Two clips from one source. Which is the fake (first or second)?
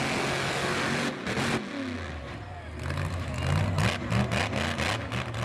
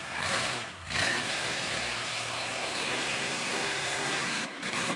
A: second